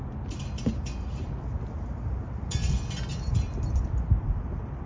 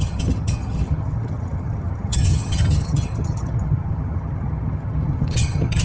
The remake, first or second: second